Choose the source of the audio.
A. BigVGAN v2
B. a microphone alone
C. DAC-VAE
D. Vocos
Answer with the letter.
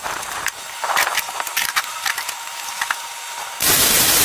A